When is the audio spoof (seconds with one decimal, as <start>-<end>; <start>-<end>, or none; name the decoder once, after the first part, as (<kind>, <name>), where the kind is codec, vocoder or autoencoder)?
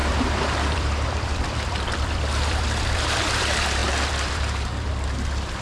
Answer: 0.0-3.4 (vocoder, BigVGAN v2); 3.8-4.9